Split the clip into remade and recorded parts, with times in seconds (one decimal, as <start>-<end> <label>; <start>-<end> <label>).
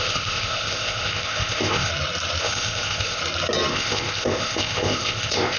0.0-1.9 remade; 1.9-2.4 recorded; 2.4-3.2 remade; 3.2-3.7 recorded; 3.7-5.6 remade